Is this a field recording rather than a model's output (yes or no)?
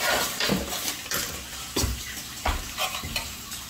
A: yes